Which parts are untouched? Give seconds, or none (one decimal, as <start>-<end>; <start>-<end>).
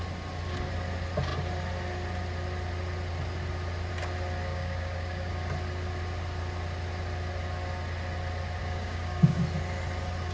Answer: 0.0-4.5; 5.3-8.6; 9.4-10.3